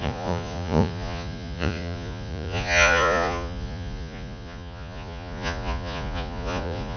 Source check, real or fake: fake